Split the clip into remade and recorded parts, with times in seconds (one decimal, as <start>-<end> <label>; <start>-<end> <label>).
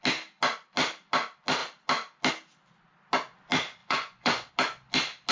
0.0-3.8 recorded; 3.8-4.5 remade; 4.5-5.3 recorded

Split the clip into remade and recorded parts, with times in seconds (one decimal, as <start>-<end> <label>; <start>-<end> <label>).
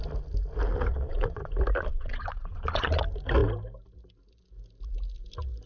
0.0-0.9 recorded; 0.9-1.5 remade; 1.5-1.9 recorded; 1.9-3.0 remade; 3.0-5.7 recorded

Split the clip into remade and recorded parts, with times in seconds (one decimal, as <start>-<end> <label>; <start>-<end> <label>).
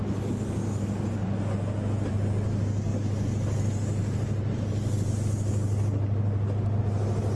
0.0-7.4 recorded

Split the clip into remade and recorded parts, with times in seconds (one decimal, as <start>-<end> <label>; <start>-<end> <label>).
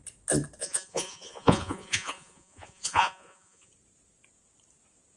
0.0-0.6 recorded; 0.6-3.7 remade; 3.7-5.2 recorded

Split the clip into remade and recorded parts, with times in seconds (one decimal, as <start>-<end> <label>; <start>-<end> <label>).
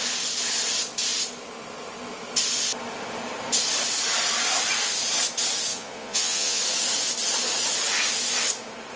0.0-5.7 recorded; 5.7-6.6 remade; 6.6-9.0 recorded